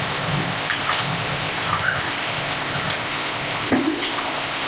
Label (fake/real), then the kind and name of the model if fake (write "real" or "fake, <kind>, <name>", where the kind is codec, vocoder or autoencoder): fake, codec, ZipCodec